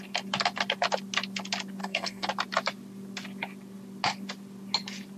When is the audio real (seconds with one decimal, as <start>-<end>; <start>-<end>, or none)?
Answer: 0.0-1.8; 2.3-5.2